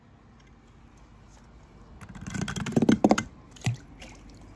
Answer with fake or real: real